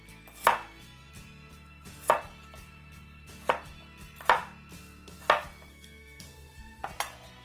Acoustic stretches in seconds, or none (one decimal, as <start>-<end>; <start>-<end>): 0.0-5.7; 6.8-7.4